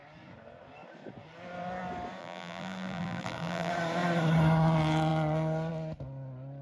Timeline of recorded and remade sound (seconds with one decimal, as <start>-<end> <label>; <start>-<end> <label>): 0.0-2.2 recorded; 2.2-3.7 remade; 3.7-6.6 recorded